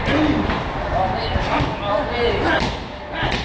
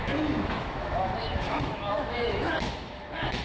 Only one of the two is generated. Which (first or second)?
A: second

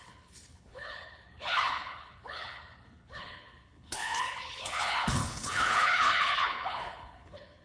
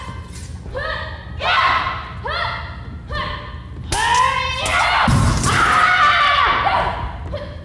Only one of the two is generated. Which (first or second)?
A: first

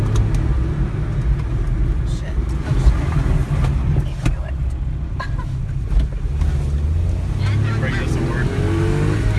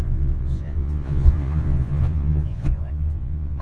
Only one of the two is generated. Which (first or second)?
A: second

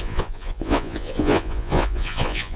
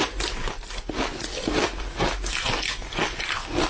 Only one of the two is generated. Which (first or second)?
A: first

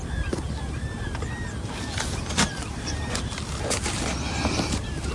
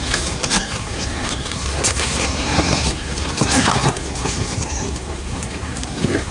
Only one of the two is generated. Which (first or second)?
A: second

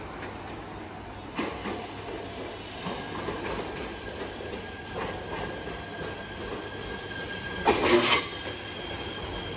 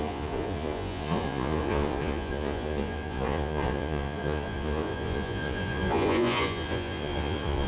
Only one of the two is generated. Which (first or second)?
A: second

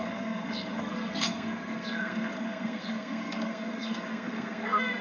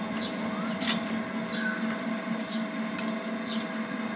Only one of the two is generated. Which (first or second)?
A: first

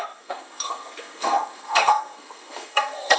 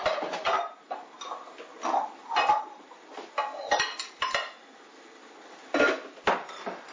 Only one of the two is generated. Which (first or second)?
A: first